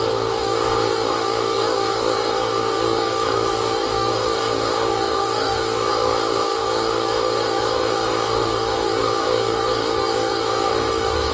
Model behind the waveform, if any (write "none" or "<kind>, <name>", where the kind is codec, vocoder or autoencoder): codec, DAC